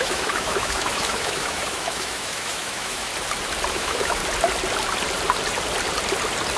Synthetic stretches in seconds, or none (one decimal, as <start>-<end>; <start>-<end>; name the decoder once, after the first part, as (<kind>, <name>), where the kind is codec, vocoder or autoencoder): 0.0-3.1 (autoencoder, DAC-VAE); 3.7-4.2